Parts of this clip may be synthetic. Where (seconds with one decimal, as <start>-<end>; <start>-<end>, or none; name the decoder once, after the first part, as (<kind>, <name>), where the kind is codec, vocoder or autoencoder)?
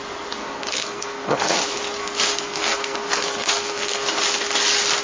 0.4-1.6 (codec, SNAC); 2.0-4.2